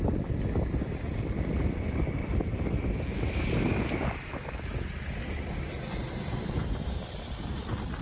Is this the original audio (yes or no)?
yes